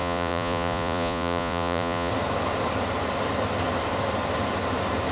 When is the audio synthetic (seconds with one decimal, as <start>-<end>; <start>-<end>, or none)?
0.0-2.1